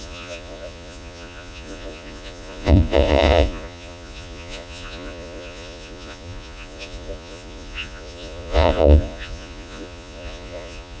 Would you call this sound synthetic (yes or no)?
yes